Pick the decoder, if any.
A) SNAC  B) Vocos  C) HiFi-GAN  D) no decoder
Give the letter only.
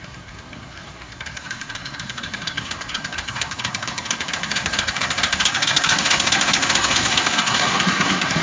A